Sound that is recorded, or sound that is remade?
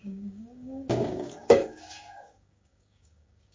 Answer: remade